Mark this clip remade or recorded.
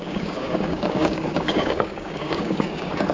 remade